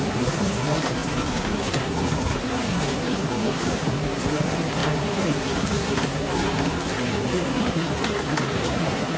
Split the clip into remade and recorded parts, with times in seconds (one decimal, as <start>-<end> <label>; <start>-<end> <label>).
0.0-9.2 remade